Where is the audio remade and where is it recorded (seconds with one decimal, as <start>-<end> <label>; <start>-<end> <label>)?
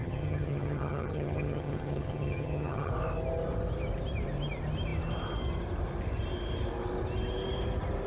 0.0-2.9 remade; 2.9-8.1 recorded